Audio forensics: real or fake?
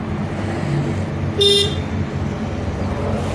real